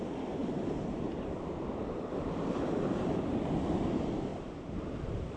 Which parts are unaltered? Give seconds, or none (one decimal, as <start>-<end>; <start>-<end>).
0.0-4.3